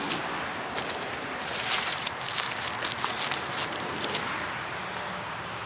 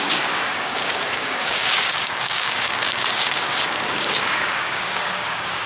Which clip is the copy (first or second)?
second